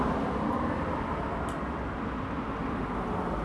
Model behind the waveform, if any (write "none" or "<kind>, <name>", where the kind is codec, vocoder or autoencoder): none